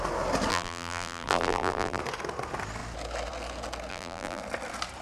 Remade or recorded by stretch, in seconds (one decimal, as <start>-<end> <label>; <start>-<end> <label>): 0.0-0.5 recorded; 0.5-2.0 remade; 2.0-3.9 recorded; 3.9-4.4 remade; 4.4-5.0 recorded